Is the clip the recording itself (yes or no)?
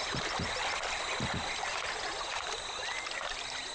yes